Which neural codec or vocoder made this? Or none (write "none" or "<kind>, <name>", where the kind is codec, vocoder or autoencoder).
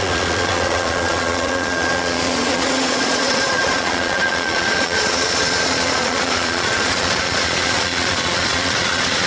vocoder, Vocos